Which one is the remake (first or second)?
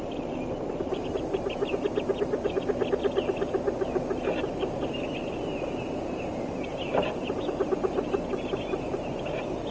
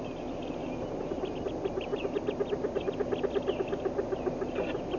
first